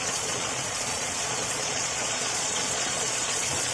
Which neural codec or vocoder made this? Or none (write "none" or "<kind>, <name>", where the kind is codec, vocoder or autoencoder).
vocoder, Vocos